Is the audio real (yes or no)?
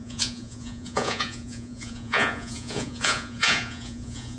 no